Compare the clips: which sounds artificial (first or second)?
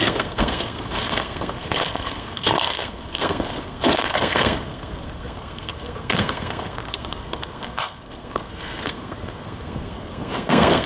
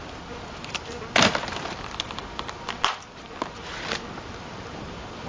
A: first